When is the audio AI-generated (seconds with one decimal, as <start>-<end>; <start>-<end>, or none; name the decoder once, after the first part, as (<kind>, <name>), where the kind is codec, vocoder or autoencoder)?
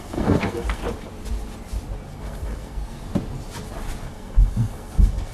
0.0-0.8 (codec, SNAC); 2.1-3.1; 4.0-5.3